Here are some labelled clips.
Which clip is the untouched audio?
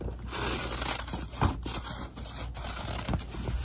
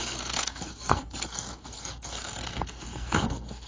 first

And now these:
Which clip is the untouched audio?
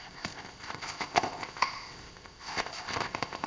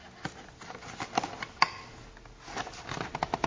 second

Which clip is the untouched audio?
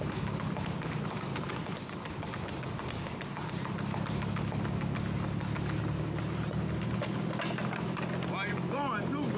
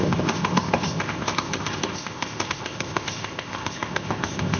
first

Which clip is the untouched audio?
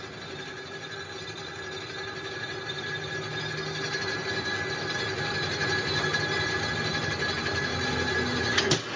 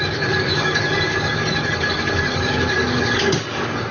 first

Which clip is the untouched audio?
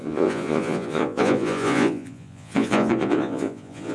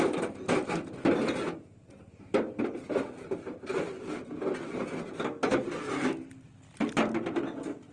second